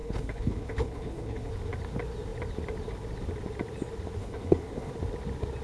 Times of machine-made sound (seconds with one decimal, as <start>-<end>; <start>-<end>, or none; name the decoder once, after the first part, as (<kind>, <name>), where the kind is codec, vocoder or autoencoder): 0.0-1.5 (codec, HILCodec); 4.2-4.9